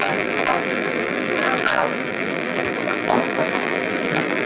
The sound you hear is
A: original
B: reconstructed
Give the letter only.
B